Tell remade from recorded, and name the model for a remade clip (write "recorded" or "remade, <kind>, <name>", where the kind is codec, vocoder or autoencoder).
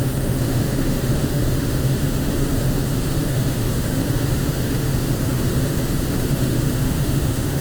remade, autoencoder, DAC-VAE